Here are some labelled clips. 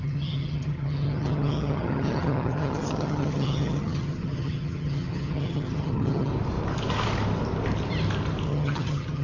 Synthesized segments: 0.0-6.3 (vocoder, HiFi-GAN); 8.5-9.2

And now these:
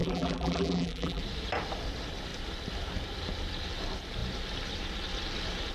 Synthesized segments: 0.0-1.2 (vocoder, BigVGAN v2)

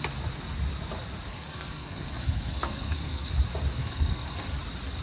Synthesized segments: 1.3-3.3 (codec, SNAC); 3.8-4.6

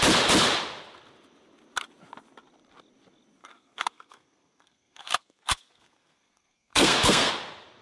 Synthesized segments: 3.4-7.3 (codec, SNAC)

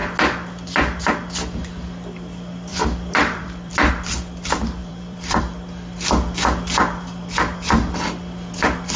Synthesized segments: 2.7-3.9 (vocoder, BigVGAN v2); 4.8-5.4

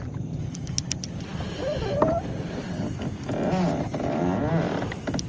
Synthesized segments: none

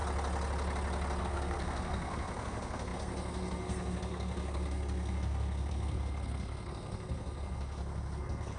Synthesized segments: 1.2-8.6 (codec, SNAC)

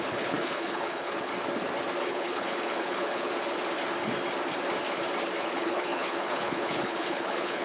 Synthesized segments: 0.0-1.3 (codec, HILCodec); 2.0-3.3; 5.4-7.6